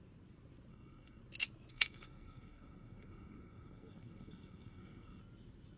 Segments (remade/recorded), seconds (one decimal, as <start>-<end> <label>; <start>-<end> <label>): 0.0-0.7 recorded; 0.7-1.2 remade; 1.2-1.7 recorded; 1.7-5.2 remade; 5.2-5.8 recorded